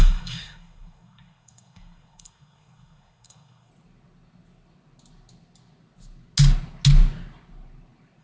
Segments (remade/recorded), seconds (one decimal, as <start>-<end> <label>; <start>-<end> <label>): 0.0-3.7 remade; 3.7-8.2 recorded